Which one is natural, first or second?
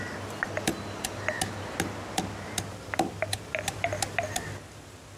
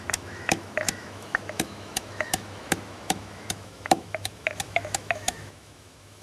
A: first